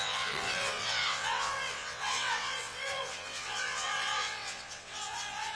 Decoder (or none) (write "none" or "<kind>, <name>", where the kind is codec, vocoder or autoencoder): vocoder, WaveNeXt